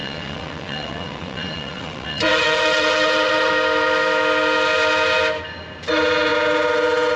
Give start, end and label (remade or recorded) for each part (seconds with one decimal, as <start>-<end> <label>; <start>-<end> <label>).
0.0-3.5 remade; 3.5-7.2 recorded